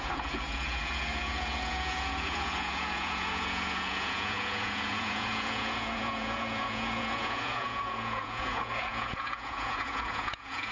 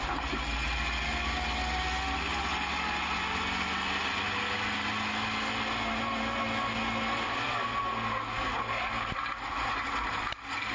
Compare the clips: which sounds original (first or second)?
second